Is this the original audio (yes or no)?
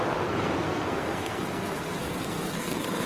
no